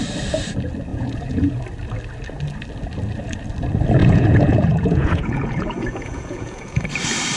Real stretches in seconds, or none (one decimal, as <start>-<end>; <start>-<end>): 0.0-0.9; 1.6-4.0; 6.8-7.4